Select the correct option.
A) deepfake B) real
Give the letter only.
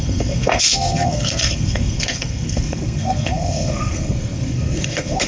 A